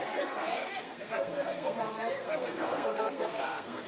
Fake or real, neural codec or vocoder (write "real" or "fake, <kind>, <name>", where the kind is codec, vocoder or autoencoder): fake, codec, SNAC